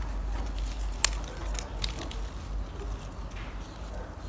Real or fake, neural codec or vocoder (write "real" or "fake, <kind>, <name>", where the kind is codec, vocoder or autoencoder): real